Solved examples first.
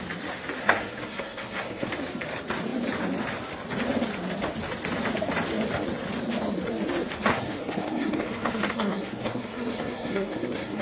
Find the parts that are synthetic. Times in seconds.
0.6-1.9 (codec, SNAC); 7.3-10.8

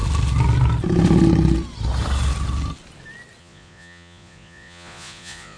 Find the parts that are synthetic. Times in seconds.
3.4-5.6 (vocoder, Vocos)